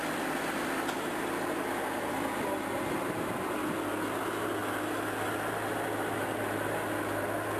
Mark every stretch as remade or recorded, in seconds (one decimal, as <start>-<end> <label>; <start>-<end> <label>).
0.0-7.6 recorded